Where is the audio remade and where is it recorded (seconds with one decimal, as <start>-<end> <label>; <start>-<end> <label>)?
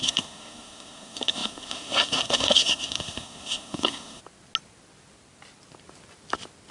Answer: 0.0-4.2 remade; 4.2-6.7 recorded